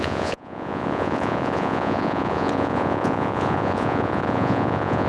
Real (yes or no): no